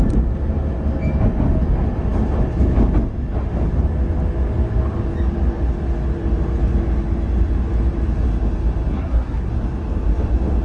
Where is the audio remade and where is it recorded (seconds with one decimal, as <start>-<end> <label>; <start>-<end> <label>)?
0.0-8.9 recorded; 8.9-9.5 remade; 9.5-10.6 recorded